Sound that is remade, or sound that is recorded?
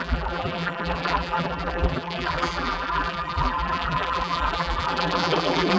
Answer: remade